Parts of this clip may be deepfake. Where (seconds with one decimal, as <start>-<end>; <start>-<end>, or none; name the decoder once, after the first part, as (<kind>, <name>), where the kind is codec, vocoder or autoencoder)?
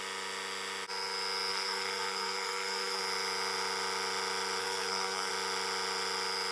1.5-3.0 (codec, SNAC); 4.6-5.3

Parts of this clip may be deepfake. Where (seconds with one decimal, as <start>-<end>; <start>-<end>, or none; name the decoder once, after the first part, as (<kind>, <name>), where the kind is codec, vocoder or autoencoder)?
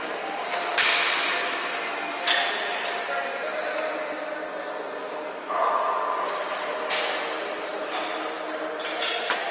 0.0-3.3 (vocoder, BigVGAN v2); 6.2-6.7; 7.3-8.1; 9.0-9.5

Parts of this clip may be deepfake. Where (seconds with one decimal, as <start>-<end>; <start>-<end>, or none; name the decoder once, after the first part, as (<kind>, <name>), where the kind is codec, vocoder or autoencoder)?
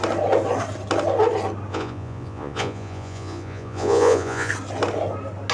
1.7-4.5 (vocoder, Vocos)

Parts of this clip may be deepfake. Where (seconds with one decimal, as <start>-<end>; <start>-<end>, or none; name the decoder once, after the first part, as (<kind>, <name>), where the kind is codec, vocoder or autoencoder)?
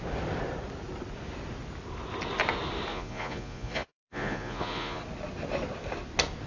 2.9-5.0 (vocoder, Vocos)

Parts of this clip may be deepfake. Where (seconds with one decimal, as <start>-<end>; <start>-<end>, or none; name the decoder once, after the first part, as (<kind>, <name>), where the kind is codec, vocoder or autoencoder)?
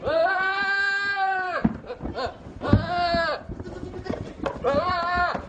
0.0-1.6 (vocoder, BigVGAN v2); 4.9-5.5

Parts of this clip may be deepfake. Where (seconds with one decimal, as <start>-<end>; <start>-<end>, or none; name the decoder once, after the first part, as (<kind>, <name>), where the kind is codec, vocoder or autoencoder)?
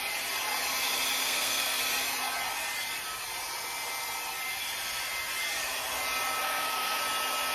1.2-1.8 (codec, SNAC); 6.4-7.0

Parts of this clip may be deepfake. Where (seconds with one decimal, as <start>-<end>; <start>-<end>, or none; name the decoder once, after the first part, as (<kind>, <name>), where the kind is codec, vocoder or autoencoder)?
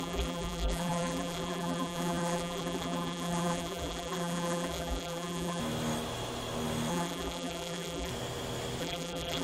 0.0-5.6 (vocoder, BigVGAN v2); 6.9-8.1; 8.8-9.4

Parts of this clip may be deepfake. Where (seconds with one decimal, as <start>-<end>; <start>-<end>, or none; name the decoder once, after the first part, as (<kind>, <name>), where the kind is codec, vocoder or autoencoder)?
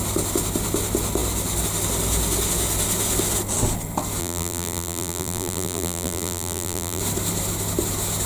4.2-7.0 (vocoder, BigVGAN v2)